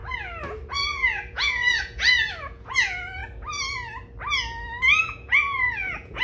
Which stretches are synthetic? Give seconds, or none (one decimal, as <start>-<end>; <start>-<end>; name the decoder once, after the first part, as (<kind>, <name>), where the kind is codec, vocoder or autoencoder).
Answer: 0.7-3.2 (vocoder, Vocos); 5.0-6.2